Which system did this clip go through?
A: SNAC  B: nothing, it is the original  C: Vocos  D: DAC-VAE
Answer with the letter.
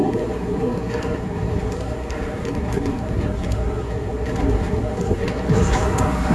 A